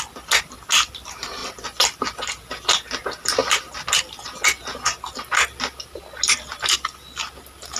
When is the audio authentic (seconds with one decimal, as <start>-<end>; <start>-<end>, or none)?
0.0-1.4; 2.0-7.8